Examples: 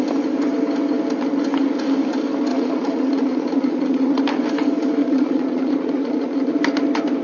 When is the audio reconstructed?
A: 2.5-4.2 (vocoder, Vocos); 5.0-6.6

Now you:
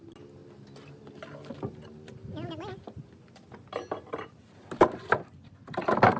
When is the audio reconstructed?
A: none